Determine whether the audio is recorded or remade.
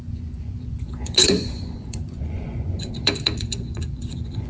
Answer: remade